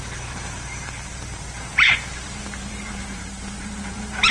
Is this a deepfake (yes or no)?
yes